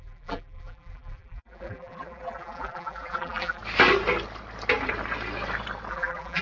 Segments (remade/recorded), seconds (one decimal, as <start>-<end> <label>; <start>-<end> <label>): 0.0-3.6 remade; 3.6-5.9 recorded; 5.9-6.4 remade

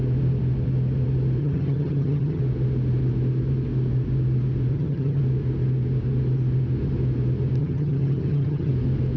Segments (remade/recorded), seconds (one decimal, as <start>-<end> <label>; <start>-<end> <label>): 0.0-1.4 recorded; 1.4-2.4 remade; 2.4-4.7 recorded; 4.7-5.2 remade; 5.2-7.6 recorded; 7.6-8.7 remade; 8.7-9.2 recorded

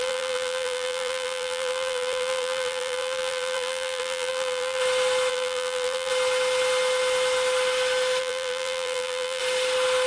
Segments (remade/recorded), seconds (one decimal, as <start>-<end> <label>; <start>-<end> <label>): 0.0-4.8 remade; 4.8-5.3 recorded; 5.3-6.1 remade; 6.1-8.2 recorded; 8.2-9.4 remade; 9.4-10.1 recorded

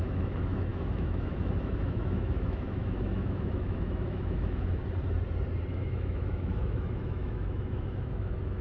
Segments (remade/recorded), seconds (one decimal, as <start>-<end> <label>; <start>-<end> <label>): 0.0-4.8 remade; 4.8-5.7 recorded; 5.7-8.6 remade

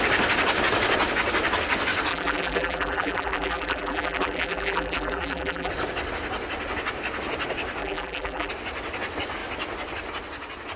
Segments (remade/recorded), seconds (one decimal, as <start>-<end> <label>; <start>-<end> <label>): 0.0-2.1 recorded; 2.1-5.7 remade; 5.7-7.8 recorded; 7.8-8.5 remade; 8.5-10.8 recorded

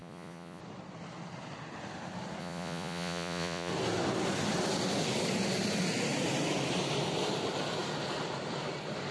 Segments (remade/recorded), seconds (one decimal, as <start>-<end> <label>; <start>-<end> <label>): 0.0-0.6 remade; 0.6-2.4 recorded; 2.4-3.7 remade; 3.7-9.1 recorded